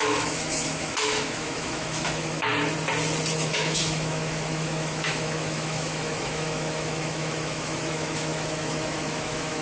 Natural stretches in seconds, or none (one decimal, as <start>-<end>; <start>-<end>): 2.5-3.3